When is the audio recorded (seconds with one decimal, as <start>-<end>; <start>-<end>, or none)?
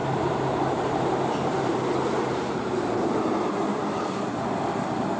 3.1-3.7; 4.6-5.2